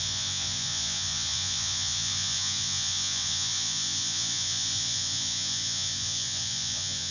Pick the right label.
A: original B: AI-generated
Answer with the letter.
B